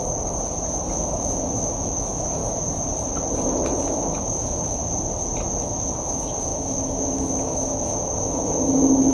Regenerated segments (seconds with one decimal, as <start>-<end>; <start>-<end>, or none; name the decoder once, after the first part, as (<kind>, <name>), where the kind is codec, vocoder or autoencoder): 0.8-2.4 (autoencoder, DAC-VAE); 3.8-4.8; 5.5-9.1